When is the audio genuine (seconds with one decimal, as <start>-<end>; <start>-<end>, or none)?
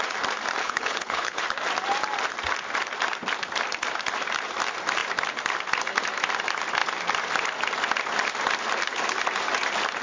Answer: 0.0-0.6; 1.4-10.0